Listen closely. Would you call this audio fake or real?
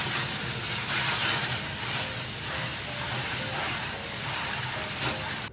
real